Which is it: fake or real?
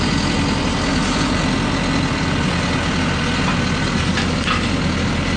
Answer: real